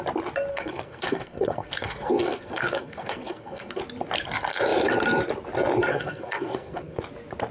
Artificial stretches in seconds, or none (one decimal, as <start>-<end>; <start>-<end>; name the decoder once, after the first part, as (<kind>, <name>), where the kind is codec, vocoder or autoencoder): 0.5-3.8 (codec, SNAC); 5.9-7.0